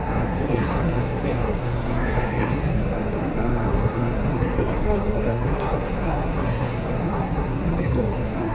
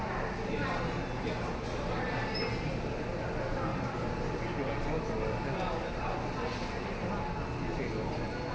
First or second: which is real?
second